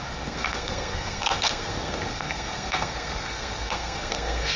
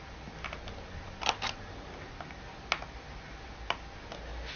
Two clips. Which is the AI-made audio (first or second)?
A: first